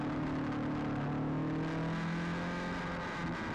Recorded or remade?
recorded